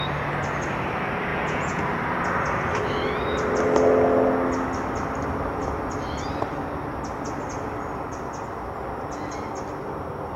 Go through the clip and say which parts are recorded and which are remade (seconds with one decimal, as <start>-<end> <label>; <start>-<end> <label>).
0.0-1.3 recorded; 1.3-1.8 remade; 1.8-10.4 recorded